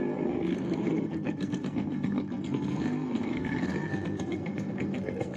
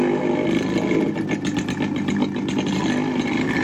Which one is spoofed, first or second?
first